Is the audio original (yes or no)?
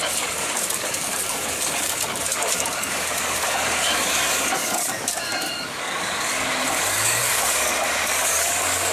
no